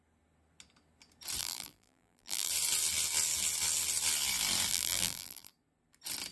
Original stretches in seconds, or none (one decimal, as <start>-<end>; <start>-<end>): 0.0-1.4; 2.5-4.7; 5.5-6.3